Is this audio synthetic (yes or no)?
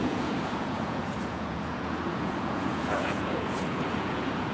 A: yes